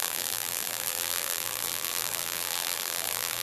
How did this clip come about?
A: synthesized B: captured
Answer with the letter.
A